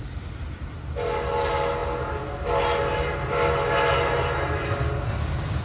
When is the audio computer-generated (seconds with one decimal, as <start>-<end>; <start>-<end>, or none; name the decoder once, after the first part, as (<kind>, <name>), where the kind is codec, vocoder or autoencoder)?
none